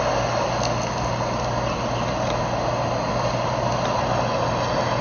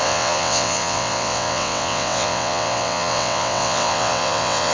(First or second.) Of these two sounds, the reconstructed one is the second